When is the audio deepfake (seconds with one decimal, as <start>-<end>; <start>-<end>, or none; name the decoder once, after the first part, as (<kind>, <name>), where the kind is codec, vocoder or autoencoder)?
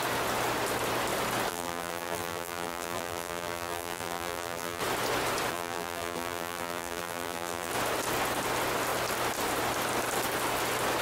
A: 1.5-4.8 (vocoder, BigVGAN v2); 5.5-7.7